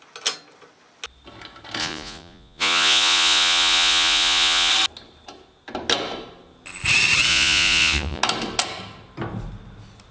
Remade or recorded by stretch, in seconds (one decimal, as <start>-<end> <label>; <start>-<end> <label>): 0.0-1.8 recorded; 1.8-4.7 remade; 4.7-7.3 recorded; 7.3-8.2 remade; 8.2-10.1 recorded